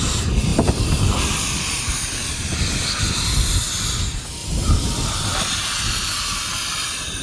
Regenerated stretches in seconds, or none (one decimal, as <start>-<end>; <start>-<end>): 0.5-1.8; 2.2-3.2; 4.4-5.4